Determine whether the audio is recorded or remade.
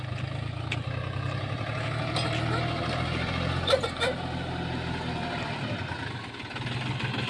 recorded